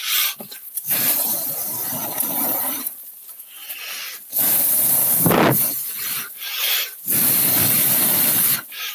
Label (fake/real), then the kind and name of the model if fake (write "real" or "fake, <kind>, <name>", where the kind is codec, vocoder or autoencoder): real